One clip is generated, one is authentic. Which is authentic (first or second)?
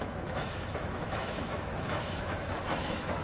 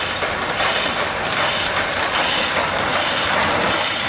second